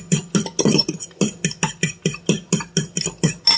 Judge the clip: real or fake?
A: real